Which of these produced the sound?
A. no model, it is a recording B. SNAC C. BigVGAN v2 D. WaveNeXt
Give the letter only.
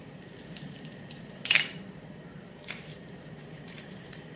C